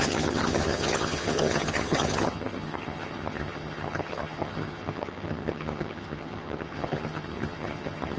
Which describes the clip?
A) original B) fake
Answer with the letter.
B